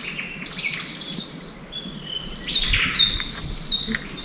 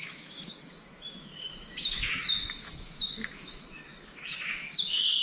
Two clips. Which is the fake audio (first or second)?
second